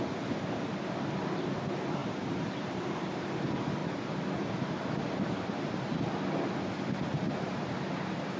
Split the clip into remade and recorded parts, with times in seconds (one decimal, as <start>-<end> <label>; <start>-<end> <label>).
0.0-2.0 recorded; 2.0-3.3 remade; 3.3-8.4 recorded